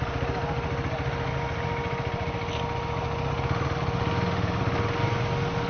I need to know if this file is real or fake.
real